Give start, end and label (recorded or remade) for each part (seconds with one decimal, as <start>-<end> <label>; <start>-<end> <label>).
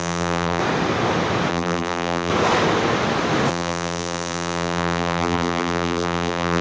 0.0-0.6 remade; 0.6-1.5 recorded; 1.5-2.3 remade; 2.3-3.5 recorded; 3.5-6.6 remade